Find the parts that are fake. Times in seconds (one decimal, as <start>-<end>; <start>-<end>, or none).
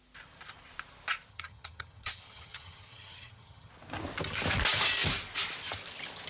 1.3-3.7